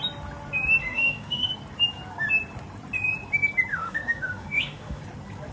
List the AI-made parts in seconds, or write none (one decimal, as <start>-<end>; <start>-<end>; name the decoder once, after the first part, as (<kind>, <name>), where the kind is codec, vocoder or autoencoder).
0.8-1.5 (autoencoder, DAC-VAE); 3.7-5.0

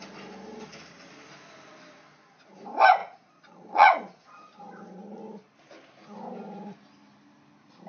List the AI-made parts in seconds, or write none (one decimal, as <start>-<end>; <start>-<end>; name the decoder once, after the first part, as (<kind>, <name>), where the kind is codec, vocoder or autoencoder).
3.0-5.2 (vocoder, Vocos)